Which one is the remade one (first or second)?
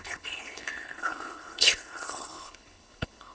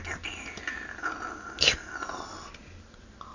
first